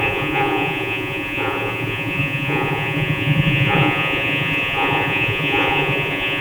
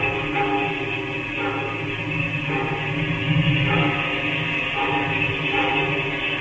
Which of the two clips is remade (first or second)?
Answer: first